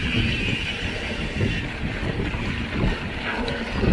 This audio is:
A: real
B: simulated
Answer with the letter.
A